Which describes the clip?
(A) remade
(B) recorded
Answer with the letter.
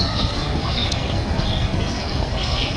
A